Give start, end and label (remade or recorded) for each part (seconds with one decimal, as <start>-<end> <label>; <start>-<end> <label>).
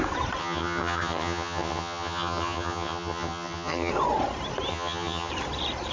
0.0-0.4 recorded; 0.4-3.9 remade; 3.9-4.7 recorded; 4.7-5.3 remade; 5.3-5.9 recorded